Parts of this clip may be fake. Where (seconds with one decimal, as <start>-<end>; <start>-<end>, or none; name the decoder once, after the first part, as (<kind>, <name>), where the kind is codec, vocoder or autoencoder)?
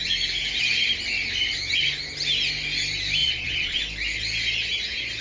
3.2-3.8 (vocoder, Vocos)